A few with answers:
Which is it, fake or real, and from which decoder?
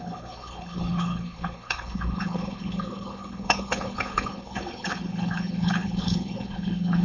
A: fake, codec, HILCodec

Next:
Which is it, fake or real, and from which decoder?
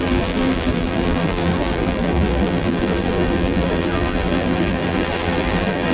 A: fake, vocoder, BigVGAN v2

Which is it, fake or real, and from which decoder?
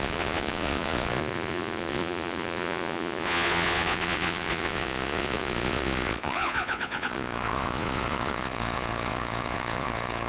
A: fake, vocoder, Vocos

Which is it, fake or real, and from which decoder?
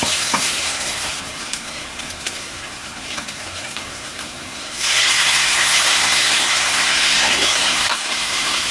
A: fake, codec, SNAC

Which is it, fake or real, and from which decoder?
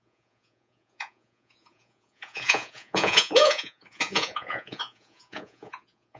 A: fake, vocoder, Vocos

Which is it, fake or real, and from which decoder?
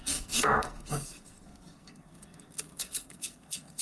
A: fake, codec, SNAC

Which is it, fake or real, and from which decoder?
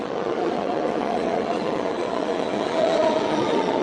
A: fake, vocoder, Vocos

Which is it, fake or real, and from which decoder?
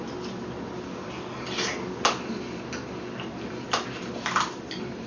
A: real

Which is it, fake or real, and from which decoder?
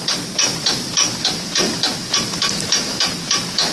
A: fake, vocoder, BigVGAN v2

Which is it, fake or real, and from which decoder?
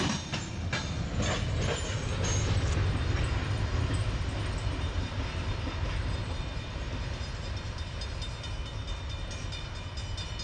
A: real